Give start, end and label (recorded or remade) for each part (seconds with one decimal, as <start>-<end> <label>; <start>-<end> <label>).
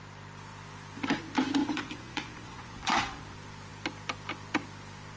0.0-1.6 recorded; 1.6-3.2 remade; 3.2-5.2 recorded